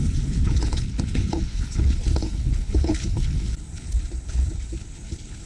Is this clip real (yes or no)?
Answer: no